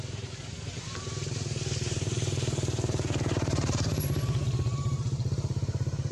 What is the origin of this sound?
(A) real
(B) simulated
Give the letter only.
B